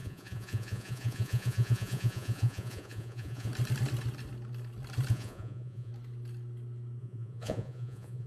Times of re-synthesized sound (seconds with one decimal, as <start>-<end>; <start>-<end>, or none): 0.0-3.5; 5.1-5.9; 7.0-8.3